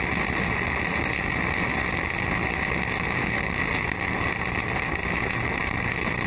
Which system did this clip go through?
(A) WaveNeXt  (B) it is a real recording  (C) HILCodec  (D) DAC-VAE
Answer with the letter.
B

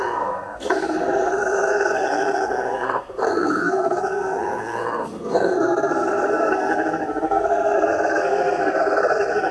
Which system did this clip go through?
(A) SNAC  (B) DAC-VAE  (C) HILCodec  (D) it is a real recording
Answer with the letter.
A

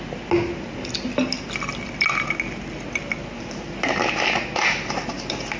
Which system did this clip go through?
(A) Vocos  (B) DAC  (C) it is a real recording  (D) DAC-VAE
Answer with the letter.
C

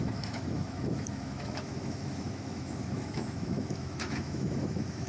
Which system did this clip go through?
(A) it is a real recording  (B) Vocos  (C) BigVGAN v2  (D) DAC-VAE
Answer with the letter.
D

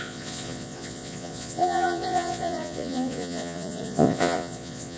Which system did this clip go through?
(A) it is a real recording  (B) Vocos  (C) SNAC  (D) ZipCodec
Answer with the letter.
B